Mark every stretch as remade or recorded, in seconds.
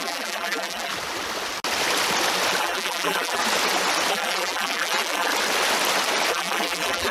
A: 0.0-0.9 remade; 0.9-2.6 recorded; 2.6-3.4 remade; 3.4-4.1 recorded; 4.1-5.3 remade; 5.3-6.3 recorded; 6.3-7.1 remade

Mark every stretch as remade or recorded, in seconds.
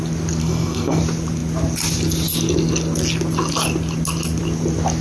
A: 0.0-0.4 recorded; 0.4-1.0 remade; 1.0-5.0 recorded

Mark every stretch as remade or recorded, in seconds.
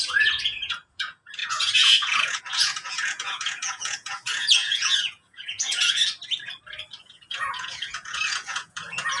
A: 0.0-6.0 remade; 6.0-7.0 recorded; 7.0-9.2 remade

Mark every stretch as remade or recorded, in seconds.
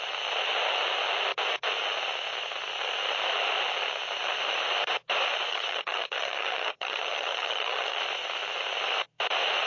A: 0.0-5.5 recorded; 5.5-8.0 remade; 8.0-9.7 recorded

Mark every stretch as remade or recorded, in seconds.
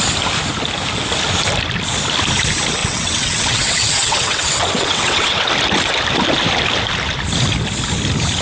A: 0.0-2.8 recorded; 2.8-5.5 remade; 5.5-8.4 recorded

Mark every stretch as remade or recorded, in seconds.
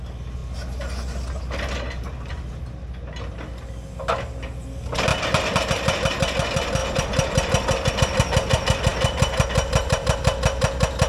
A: 0.0-5.1 recorded; 5.1-5.7 remade; 5.7-11.1 recorded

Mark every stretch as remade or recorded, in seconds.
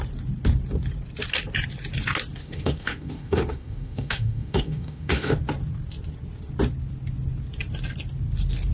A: 0.0-2.4 recorded; 2.4-5.3 remade; 5.3-8.7 recorded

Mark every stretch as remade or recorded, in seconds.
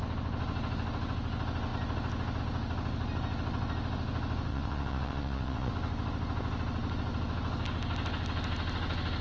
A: 0.0-4.5 recorded; 4.5-5.7 remade; 5.7-9.2 recorded